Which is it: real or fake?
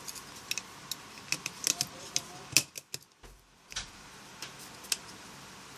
real